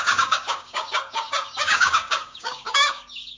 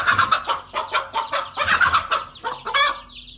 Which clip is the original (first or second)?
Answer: second